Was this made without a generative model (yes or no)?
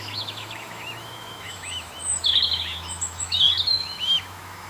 no